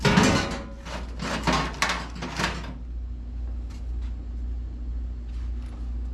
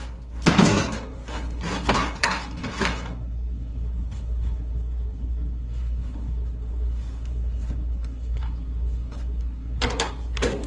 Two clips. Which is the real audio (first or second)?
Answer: first